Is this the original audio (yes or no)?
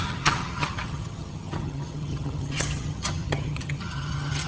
no